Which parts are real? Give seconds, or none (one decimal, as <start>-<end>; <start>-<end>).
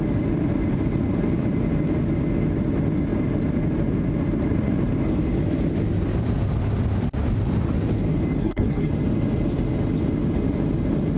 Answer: 0.0-8.4; 8.9-11.2